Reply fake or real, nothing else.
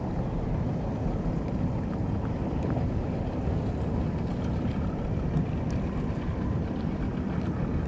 real